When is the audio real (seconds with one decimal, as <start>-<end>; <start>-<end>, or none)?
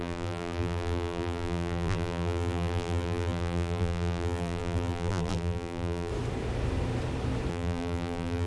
6.1-7.5